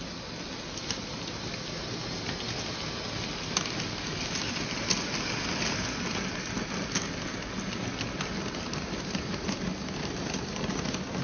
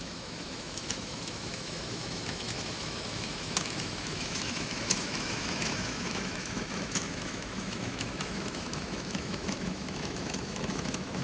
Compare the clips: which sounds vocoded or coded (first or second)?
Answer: second